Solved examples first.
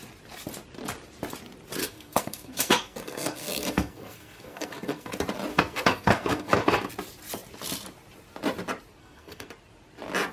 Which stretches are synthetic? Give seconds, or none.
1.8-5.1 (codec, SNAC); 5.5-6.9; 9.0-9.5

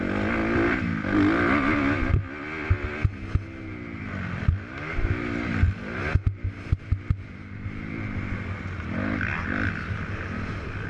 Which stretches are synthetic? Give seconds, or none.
none